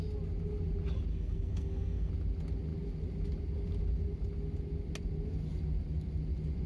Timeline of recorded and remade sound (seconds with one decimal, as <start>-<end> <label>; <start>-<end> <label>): 0.0-1.1 recorded; 1.1-2.1 remade; 2.1-6.7 recorded